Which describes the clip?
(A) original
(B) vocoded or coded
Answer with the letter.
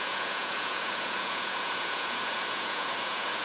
B